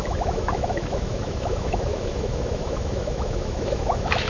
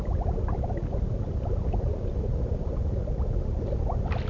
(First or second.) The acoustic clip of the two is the second